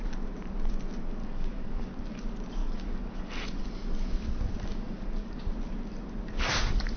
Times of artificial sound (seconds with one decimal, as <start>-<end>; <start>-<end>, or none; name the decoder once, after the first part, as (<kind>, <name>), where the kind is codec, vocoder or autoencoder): 1.2-2.2 (codec, DAC); 2.6-3.6; 4.7-5.4